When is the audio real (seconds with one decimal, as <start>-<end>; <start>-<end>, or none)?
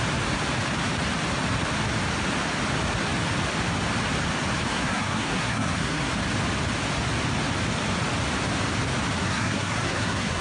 0.0-4.7; 6.1-9.2